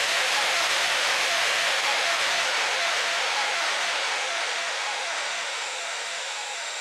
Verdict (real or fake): fake